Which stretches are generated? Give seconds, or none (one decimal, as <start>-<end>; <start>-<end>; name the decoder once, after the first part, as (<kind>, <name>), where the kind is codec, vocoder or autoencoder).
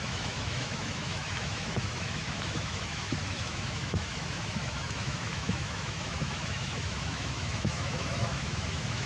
0.0-9.1 (autoencoder, DAC-VAE)